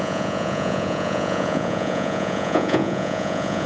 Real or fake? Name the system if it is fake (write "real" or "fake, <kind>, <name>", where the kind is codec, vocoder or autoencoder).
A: fake, vocoder, Vocos